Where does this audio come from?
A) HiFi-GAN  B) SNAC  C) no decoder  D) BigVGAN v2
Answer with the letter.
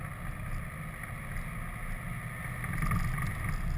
C